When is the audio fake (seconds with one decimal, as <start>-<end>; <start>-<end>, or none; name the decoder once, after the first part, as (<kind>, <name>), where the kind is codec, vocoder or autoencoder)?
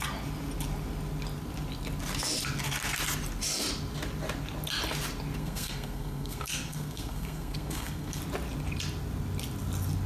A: 5.4-8.2 (codec, SNAC)